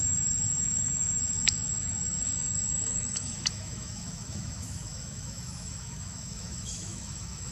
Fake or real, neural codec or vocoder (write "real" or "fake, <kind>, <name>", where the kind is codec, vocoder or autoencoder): fake, autoencoder, DAC-VAE